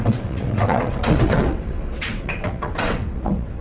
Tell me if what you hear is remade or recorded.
remade